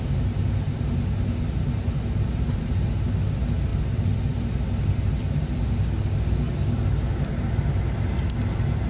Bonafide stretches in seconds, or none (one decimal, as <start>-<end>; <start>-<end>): 0.0-8.9